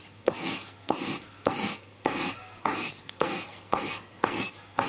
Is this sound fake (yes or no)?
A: yes